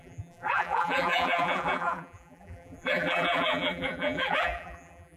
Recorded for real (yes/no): no